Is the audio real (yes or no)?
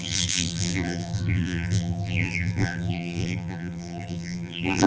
no